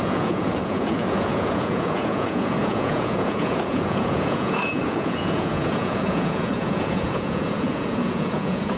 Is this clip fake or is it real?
fake